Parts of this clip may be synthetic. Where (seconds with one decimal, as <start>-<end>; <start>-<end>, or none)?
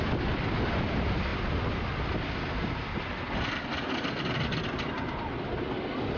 none